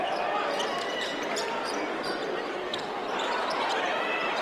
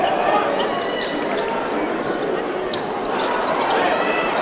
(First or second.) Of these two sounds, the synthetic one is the first